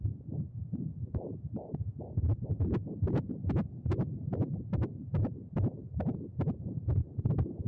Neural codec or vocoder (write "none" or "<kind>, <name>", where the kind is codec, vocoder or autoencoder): none